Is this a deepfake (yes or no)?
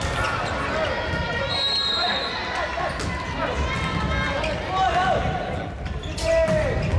no